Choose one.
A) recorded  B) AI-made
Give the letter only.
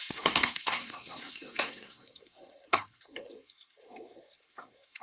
B